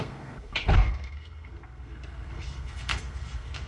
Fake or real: fake